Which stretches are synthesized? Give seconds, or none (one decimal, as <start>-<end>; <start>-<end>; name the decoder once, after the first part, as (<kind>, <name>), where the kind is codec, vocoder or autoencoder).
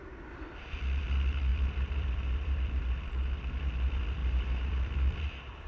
0.0-1.0 (vocoder, BigVGAN v2); 1.5-2.8; 4.2-5.7